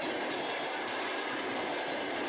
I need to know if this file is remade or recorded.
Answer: recorded